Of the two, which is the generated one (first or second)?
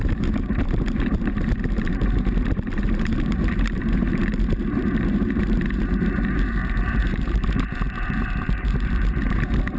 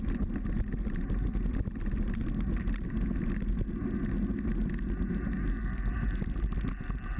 first